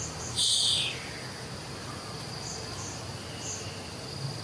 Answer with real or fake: real